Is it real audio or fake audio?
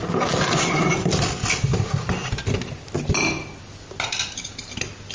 real